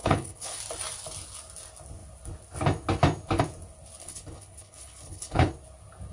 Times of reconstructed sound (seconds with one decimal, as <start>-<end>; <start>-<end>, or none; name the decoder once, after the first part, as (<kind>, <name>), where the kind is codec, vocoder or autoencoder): 0.0-0.6 (codec, HILCodec); 4.0-5.5